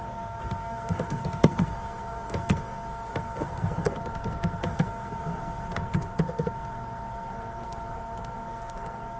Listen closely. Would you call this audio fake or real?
fake